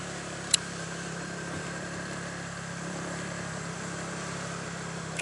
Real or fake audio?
fake